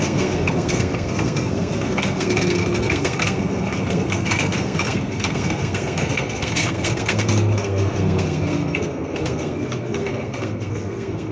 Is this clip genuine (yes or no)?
no